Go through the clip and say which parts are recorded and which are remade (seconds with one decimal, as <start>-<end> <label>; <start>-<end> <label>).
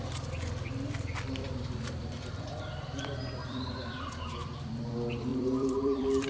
0.0-1.4 recorded; 1.4-2.6 remade; 2.6-3.4 recorded; 3.4-4.7 remade; 4.7-5.3 recorded; 5.3-6.3 remade